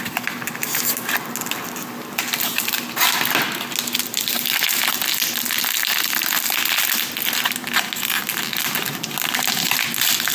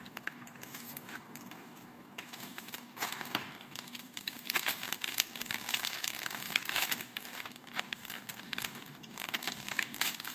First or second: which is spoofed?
second